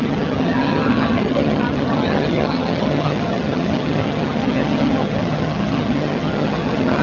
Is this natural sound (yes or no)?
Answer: no